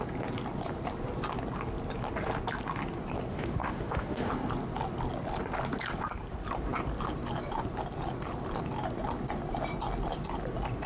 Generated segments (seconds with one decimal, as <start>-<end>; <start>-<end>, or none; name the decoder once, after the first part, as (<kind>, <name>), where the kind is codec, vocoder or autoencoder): 3.3-4.3 (autoencoder, DAC-VAE)